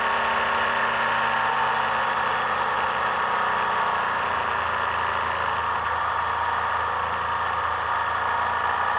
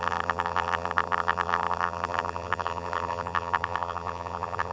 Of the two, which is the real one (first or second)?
first